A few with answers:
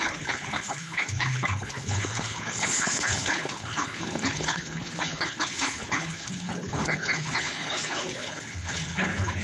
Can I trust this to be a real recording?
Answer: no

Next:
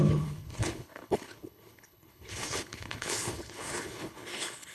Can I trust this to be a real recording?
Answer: no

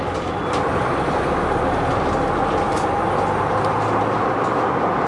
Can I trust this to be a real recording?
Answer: yes